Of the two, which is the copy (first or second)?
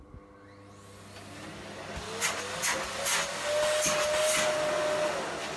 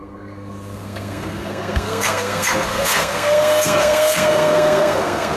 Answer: second